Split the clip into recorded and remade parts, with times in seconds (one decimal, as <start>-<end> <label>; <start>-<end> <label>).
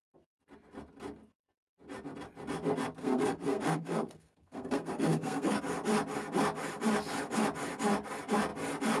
0.0-3.0 recorded; 3.0-5.6 remade; 5.6-9.0 recorded